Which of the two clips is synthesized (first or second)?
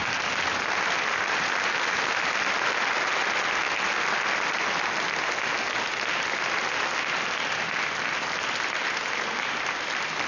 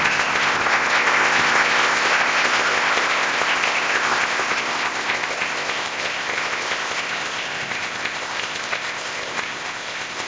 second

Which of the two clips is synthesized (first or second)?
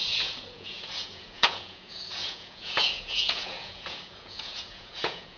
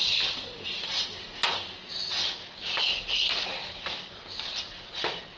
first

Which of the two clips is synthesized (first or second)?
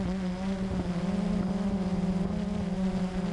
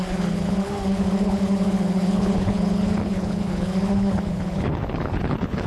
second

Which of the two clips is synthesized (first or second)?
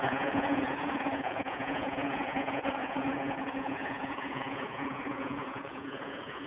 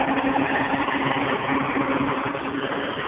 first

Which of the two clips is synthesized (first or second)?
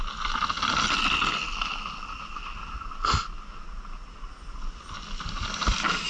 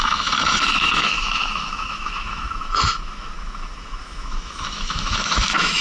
second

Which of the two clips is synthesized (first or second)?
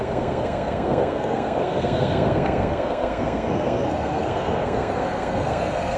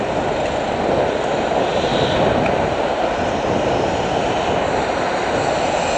first